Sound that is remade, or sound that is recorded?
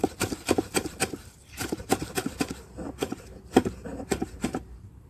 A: remade